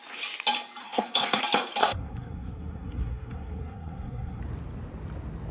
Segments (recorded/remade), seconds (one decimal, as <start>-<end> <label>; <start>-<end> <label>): 0.0-0.8 recorded; 0.8-1.4 remade; 1.4-1.8 recorded; 1.8-4.4 remade; 4.4-5.5 recorded